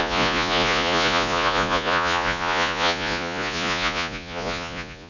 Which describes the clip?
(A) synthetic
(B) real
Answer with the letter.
A